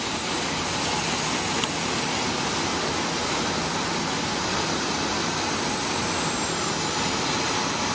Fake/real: real